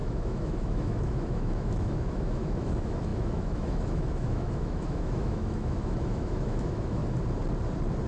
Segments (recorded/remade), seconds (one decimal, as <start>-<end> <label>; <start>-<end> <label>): 0.0-7.0 remade; 7.0-8.1 recorded